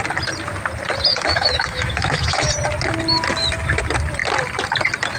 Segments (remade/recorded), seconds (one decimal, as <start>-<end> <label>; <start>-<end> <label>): 0.0-1.1 recorded; 1.1-2.5 remade; 2.5-5.2 recorded